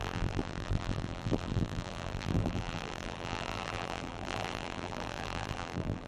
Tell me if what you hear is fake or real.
fake